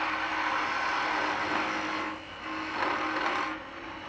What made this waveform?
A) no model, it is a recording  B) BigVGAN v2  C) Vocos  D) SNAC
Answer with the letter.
A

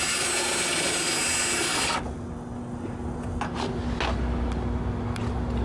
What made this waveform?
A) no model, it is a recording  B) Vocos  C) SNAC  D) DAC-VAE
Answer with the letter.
A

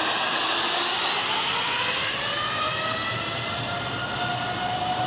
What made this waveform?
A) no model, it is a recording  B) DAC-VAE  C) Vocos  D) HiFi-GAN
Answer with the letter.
A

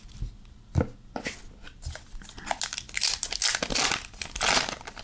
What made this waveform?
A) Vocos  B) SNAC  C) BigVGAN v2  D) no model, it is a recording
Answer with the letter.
D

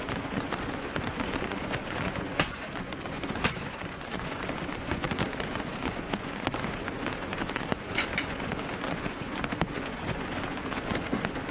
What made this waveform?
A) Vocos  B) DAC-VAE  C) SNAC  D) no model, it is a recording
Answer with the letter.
A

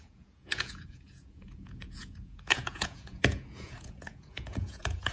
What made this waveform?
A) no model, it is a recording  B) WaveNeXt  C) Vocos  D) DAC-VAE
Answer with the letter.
C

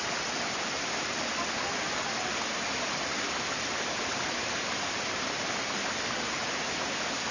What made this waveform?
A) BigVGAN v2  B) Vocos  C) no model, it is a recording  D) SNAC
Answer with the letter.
C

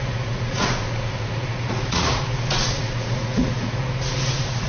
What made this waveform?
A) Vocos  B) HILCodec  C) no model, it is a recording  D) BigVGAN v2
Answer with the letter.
A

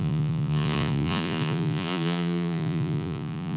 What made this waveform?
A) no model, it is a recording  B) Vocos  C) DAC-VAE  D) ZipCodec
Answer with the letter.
B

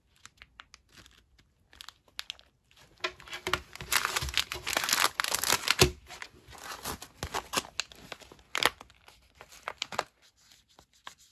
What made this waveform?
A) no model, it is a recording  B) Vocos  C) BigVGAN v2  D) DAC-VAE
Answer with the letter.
A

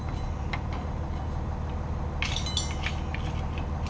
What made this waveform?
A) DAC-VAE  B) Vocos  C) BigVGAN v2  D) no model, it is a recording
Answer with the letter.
D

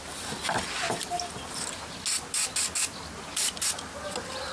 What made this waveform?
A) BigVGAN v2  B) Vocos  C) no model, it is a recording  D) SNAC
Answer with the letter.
C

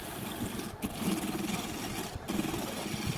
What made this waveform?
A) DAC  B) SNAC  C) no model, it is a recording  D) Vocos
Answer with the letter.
C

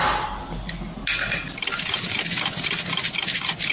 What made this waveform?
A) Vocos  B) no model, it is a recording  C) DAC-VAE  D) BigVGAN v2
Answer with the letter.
B